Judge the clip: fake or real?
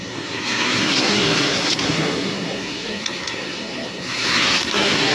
fake